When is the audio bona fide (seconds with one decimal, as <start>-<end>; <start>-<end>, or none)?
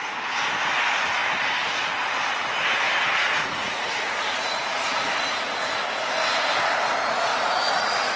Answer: 0.0-3.2; 5.6-7.3